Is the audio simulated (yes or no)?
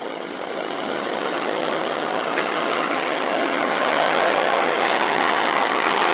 yes